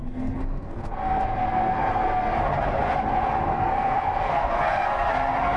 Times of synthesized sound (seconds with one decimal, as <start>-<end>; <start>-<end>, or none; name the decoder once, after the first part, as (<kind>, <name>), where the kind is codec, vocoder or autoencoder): 0.0-2.4 (codec, SNAC); 3.5-5.1